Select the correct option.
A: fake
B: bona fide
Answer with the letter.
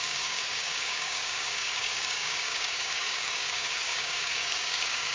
A